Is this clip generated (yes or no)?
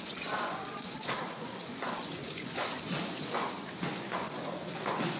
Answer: yes